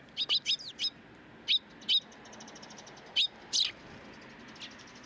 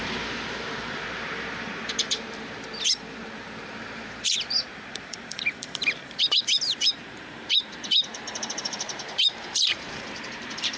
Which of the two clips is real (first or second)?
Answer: first